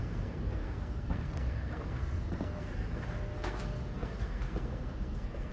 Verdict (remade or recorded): remade